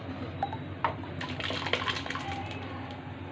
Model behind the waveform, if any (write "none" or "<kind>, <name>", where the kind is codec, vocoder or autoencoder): none